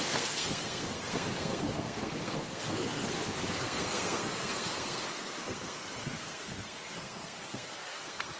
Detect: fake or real fake